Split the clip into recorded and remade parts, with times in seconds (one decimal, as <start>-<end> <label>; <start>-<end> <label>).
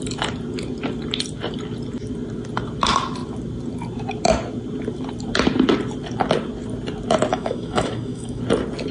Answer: 0.0-7.3 recorded; 7.3-8.4 remade; 8.4-8.9 recorded